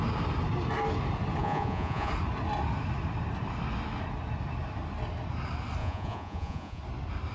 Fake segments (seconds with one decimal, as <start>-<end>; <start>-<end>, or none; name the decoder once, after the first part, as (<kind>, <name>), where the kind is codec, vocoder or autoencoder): 1.4-2.1 (vocoder, Vocos); 5.8-6.8